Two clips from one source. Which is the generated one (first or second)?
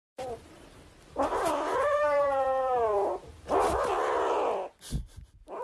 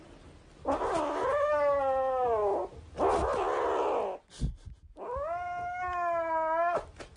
first